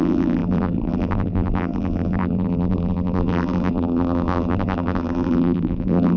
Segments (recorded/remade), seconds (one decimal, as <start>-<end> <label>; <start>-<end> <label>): 0.0-6.2 remade